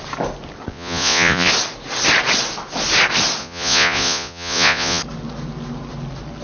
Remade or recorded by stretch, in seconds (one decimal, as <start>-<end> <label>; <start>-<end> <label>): 0.0-0.7 recorded; 0.7-1.5 remade; 1.5-3.4 recorded; 3.4-5.0 remade; 5.0-6.4 recorded